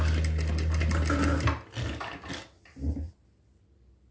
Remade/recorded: recorded